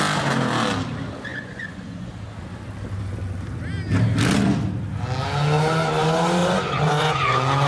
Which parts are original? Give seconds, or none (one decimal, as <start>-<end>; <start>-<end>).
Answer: 0.0-1.3; 2.1-6.4